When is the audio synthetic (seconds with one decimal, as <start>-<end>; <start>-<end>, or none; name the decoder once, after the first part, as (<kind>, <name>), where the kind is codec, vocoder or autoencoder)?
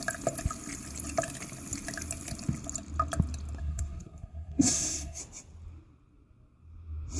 3.6-5.2 (codec, SNAC)